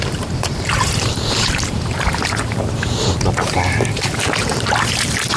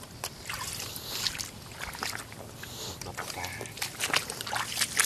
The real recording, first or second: second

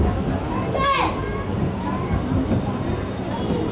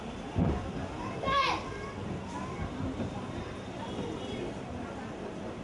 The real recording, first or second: first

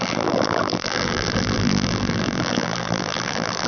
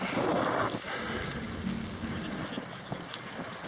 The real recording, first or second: second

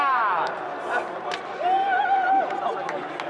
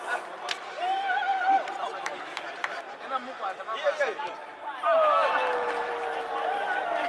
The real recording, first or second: first